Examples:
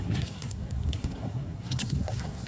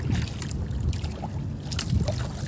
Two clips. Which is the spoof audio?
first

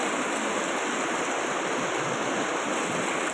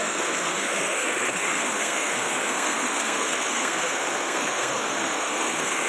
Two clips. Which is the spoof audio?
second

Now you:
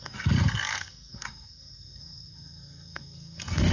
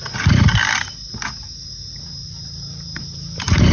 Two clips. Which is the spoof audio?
first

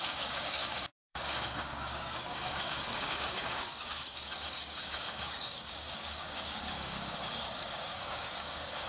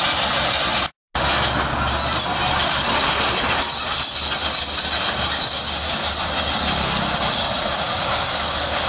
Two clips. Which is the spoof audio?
first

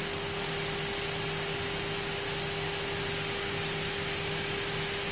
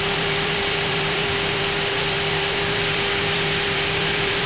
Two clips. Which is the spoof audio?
second